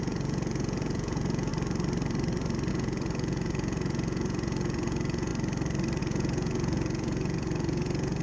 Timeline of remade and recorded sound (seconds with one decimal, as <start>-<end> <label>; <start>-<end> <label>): 0.0-1.5 remade; 1.5-2.7 recorded; 2.7-5.3 remade; 5.3-6.0 recorded; 6.0-8.2 remade